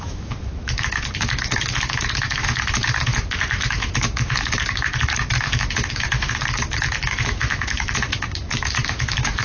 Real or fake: fake